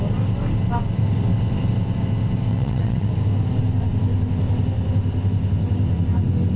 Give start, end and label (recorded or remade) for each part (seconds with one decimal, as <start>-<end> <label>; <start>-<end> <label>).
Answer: 0.0-2.5 recorded; 2.5-3.1 remade; 3.1-6.6 recorded